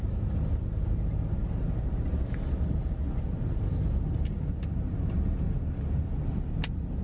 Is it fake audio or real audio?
real